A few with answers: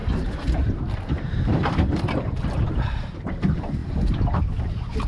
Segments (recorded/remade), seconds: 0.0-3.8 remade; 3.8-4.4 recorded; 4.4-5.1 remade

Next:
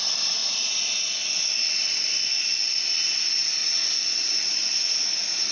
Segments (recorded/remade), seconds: 0.0-5.5 recorded

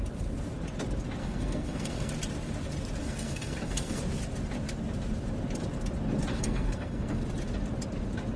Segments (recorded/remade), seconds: 0.0-1.2 recorded; 1.2-2.1 remade; 2.1-3.0 recorded; 3.0-4.0 remade; 4.0-6.3 recorded; 6.3-7.2 remade; 7.2-8.4 recorded

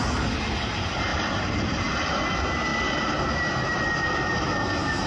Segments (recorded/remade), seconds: 0.0-1.1 recorded; 1.1-1.8 remade; 1.8-5.1 recorded

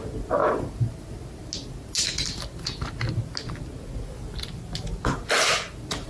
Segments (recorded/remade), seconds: 0.0-6.1 recorded

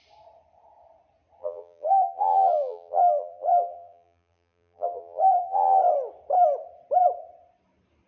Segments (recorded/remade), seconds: 0.0-1.4 recorded; 1.4-5.8 remade; 5.8-8.1 recorded

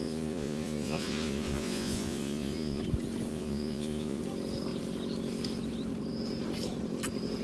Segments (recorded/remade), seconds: 0.0-2.8 remade; 2.8-3.3 recorded; 3.3-4.2 remade; 4.2-7.4 recorded

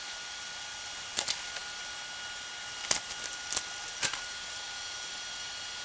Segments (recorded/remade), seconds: 0.0-5.8 recorded